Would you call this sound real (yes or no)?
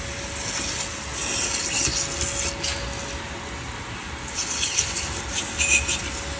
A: yes